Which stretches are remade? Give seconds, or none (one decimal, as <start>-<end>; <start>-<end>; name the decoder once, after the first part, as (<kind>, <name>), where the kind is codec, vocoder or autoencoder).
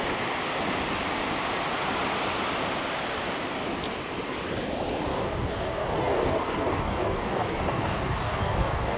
5.1-9.0 (codec, DAC)